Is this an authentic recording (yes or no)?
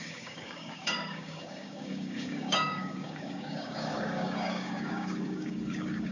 no